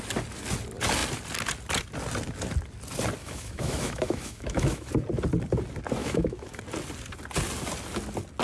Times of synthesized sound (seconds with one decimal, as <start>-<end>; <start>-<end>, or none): 3.2-4.9; 6.0-6.6